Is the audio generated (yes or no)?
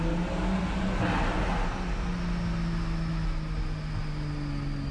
no